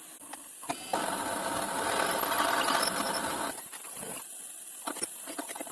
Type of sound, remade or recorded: recorded